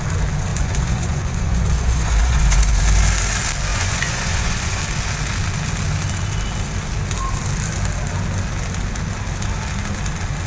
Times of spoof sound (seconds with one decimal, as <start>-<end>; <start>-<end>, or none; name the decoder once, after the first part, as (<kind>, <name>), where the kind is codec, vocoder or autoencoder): 0.5-2.8 (vocoder, Vocos); 3.7-4.8

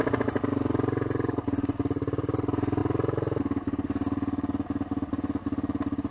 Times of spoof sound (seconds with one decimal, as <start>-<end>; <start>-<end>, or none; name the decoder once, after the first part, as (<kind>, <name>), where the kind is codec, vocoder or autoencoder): none

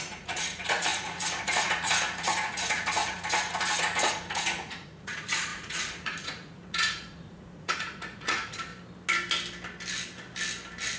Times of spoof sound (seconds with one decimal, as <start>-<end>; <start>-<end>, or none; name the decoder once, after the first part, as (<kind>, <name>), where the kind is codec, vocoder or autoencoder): 0.0-8.7 (vocoder, Vocos)

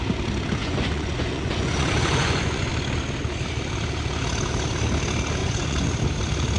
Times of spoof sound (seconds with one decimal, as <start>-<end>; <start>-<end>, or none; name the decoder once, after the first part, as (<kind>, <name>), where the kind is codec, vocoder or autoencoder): 0.6-2.7 (vocoder, Vocos); 5.4-5.9